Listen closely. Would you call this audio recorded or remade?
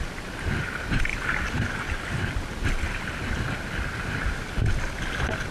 recorded